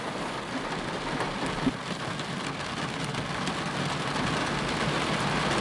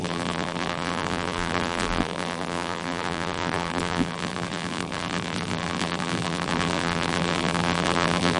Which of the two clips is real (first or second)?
first